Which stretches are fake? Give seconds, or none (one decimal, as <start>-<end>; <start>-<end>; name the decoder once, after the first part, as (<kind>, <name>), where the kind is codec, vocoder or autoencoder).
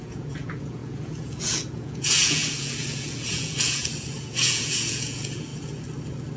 0.0-5.5 (vocoder, Vocos)